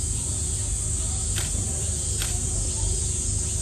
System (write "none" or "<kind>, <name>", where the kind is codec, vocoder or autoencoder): none